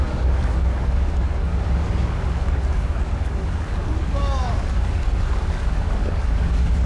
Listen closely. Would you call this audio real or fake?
fake